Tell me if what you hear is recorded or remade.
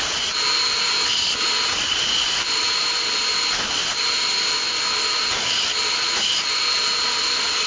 recorded